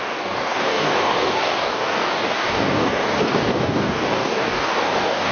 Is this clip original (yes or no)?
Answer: no